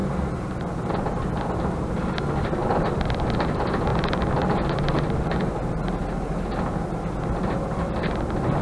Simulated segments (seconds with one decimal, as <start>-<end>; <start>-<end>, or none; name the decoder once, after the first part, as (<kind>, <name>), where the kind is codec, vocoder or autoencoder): 2.6-3.2 (vocoder, BigVGAN v2)